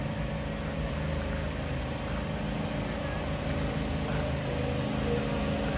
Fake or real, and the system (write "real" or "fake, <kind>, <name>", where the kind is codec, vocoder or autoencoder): real